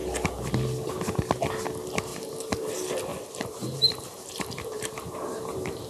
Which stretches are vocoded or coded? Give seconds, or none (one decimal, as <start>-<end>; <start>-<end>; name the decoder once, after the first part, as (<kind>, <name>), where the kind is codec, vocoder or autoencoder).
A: 2.1-2.7 (vocoder, BigVGAN v2); 3.1-5.9

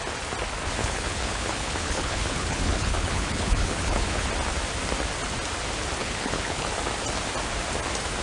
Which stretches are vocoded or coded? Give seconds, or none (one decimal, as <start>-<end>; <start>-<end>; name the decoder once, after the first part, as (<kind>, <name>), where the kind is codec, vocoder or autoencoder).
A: 0.8-4.3 (codec, HILCodec); 6.0-6.7

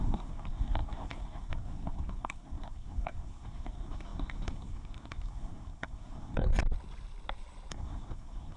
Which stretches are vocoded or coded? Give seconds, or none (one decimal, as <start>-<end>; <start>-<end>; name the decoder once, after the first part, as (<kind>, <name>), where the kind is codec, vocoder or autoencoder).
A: 0.0-6.5 (codec, SNAC); 7.7-8.6

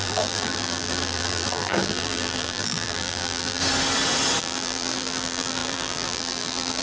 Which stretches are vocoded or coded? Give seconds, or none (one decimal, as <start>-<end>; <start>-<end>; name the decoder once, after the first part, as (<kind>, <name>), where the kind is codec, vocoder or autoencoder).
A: 0.0-3.6 (vocoder, BigVGAN v2); 4.4-6.8

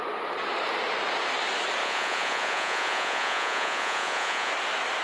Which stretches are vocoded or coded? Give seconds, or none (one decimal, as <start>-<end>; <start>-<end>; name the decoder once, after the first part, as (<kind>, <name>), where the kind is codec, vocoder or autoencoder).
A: 1.8-4.5 (vocoder, Vocos)

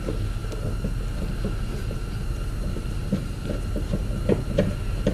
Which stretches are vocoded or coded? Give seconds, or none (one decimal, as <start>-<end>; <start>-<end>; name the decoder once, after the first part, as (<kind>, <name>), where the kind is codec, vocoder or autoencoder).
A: none

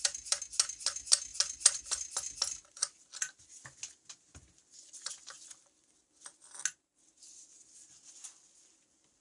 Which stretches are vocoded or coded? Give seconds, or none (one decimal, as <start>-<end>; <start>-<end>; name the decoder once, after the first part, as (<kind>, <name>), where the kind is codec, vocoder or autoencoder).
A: none

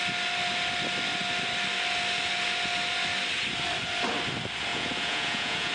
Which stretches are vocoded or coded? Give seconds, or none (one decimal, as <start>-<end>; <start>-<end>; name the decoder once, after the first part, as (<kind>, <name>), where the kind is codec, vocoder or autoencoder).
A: 4.7-5.7 (vocoder, Vocos)